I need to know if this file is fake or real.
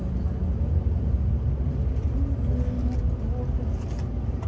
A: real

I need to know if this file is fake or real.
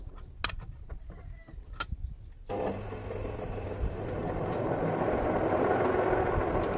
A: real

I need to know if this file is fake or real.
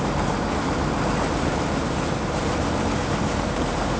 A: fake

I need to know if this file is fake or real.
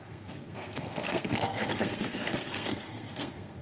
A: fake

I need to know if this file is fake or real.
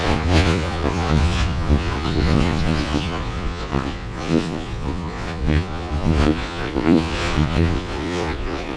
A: fake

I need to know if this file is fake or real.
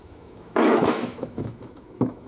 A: fake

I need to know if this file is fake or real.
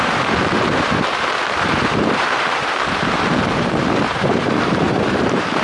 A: fake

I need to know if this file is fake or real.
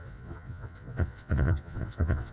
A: fake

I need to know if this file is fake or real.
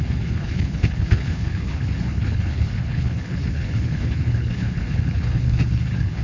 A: fake